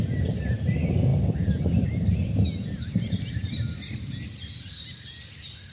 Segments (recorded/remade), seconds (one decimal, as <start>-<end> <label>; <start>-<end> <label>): 0.0-5.7 recorded